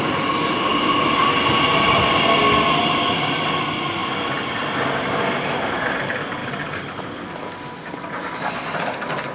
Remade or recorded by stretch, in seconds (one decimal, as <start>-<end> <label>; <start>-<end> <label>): 0.0-9.3 recorded